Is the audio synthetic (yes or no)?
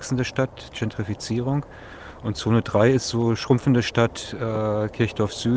no